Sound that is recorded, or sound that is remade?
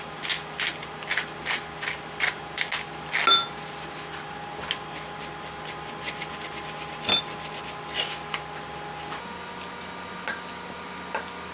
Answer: recorded